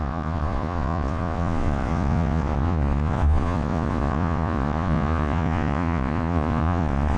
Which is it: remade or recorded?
remade